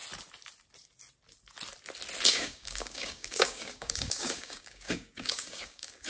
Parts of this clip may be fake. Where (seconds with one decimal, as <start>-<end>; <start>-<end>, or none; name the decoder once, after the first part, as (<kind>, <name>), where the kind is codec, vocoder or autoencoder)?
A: 2.3-6.1 (codec, DAC)